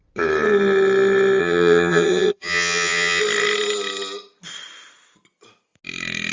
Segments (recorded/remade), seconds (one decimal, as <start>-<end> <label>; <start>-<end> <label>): 0.0-1.4 recorded; 1.4-3.2 remade; 3.2-6.3 recorded